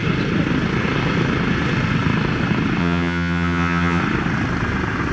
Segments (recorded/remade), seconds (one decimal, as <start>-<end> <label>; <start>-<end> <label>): 0.0-2.8 recorded; 2.8-4.0 remade; 4.0-5.1 recorded